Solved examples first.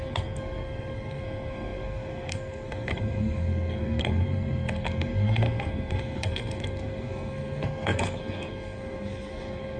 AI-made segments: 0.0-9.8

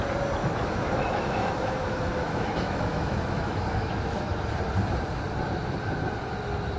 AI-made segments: 0.4-4.5

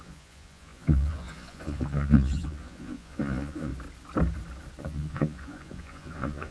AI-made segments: 0.0-3.7; 4.8-6.5

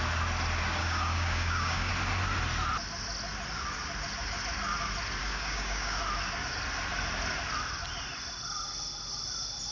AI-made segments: 0.8-1.9; 5.2-6.0